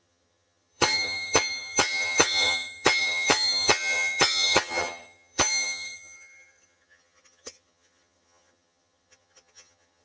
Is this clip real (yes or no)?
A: no